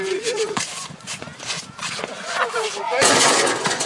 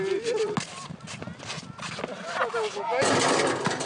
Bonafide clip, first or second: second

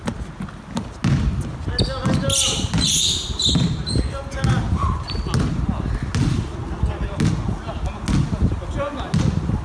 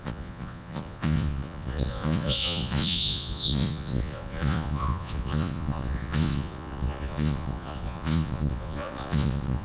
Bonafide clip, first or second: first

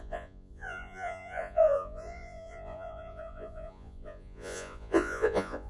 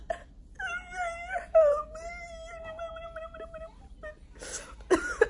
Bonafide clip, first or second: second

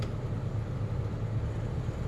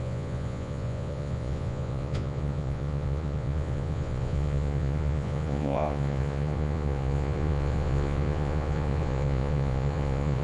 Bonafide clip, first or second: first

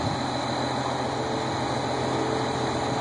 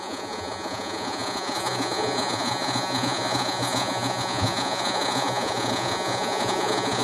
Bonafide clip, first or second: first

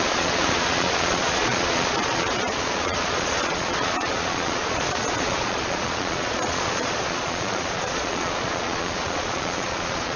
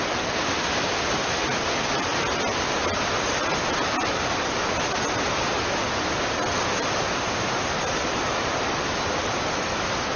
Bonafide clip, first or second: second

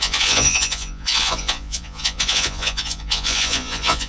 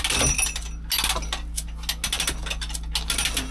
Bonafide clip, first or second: second